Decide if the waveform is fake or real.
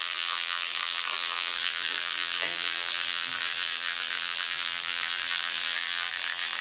fake